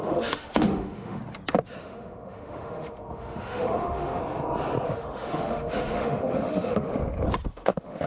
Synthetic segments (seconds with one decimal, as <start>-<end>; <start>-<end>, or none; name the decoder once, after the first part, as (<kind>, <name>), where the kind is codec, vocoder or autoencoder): 0.0-1.2 (autoencoder, DAC-VAE); 1.8-4.2; 4.9-6.9; 7.5-8.1